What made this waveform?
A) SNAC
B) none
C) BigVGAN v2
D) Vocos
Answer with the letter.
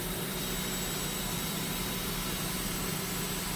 C